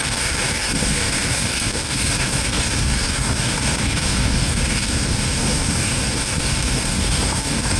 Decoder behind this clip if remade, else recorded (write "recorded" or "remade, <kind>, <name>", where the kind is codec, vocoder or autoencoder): remade, codec, DAC